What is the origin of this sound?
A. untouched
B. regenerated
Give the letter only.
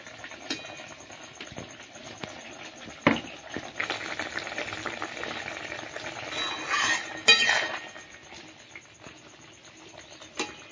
A